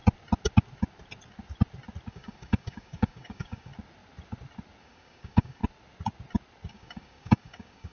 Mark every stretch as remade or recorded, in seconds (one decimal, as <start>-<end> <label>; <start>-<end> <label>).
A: 0.0-2.1 recorded; 2.1-3.7 remade; 3.7-4.8 recorded; 4.8-5.6 remade; 5.6-6.7 recorded; 6.7-7.9 remade